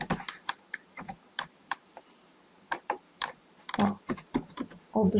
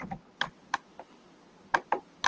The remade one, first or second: first